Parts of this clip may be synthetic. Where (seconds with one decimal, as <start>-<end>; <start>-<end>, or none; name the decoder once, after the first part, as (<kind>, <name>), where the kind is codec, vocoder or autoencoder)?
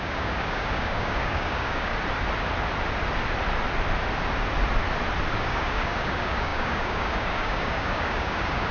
0.0-1.9 (codec, DAC); 5.3-8.7